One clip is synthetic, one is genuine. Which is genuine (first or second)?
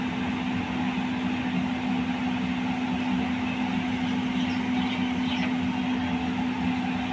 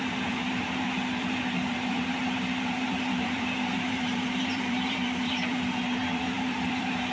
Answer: first